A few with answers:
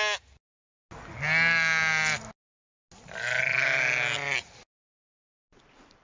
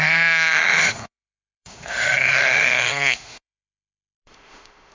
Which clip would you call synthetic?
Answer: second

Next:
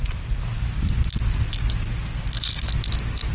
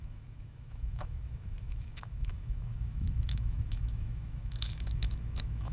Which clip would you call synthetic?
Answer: second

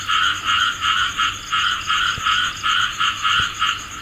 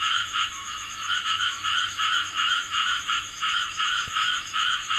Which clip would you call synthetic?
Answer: second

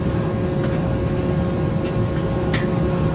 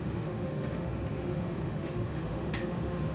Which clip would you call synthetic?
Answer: second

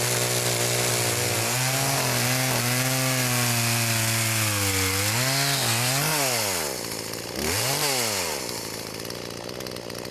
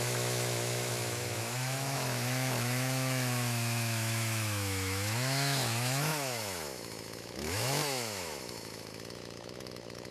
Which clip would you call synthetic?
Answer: second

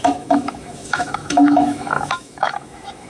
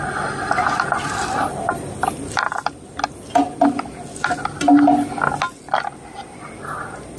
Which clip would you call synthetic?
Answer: first